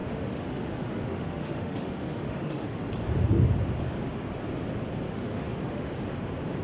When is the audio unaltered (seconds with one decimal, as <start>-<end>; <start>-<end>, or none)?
2.8-5.1; 5.9-6.6